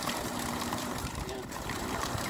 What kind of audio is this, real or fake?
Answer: fake